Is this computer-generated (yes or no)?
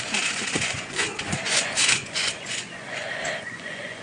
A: yes